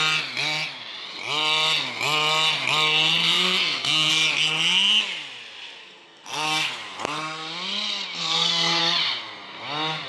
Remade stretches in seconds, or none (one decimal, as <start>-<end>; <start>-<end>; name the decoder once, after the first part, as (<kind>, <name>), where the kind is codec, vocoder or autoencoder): 3.2-4.1 (codec, SNAC); 5.8-6.7; 8.2-8.8